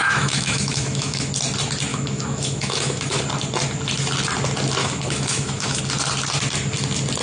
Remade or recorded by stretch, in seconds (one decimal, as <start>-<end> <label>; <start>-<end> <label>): 0.0-1.3 remade; 1.3-1.9 recorded; 1.9-3.2 remade; 3.2-4.8 recorded; 4.8-5.8 remade; 5.8-7.2 recorded